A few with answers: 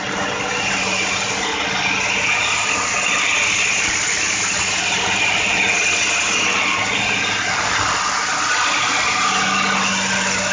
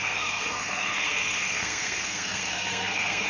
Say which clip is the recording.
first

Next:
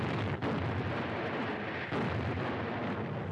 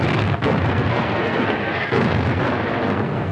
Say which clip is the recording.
first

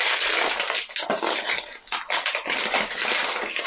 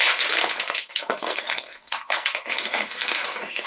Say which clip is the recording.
first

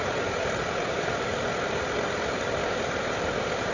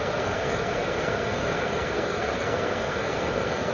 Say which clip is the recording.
first